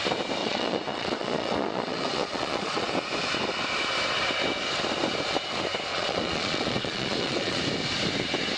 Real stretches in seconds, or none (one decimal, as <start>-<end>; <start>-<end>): 0.0-0.4; 2.9-5.9; 7.6-8.6